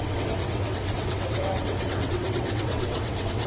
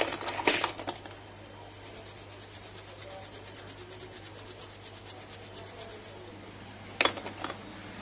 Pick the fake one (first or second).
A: first